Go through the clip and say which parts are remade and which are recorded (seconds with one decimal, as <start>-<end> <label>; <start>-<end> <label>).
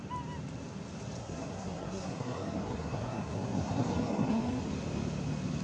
0.0-1.2 recorded; 1.2-4.6 remade; 4.6-5.6 recorded